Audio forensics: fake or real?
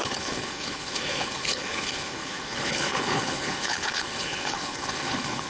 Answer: fake